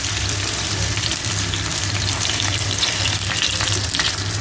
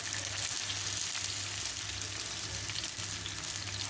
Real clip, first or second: second